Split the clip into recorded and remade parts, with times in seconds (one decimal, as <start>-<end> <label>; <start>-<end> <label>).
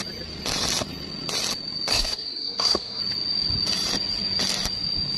0.0-1.9 recorded; 1.9-3.0 remade; 3.0-5.2 recorded